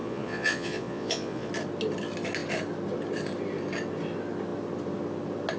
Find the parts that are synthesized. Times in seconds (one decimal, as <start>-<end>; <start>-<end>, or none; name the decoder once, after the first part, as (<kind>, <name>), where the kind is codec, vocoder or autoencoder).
0.0-1.5 (vocoder, Vocos)